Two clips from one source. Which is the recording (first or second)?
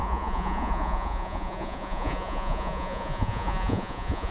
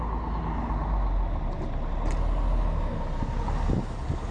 second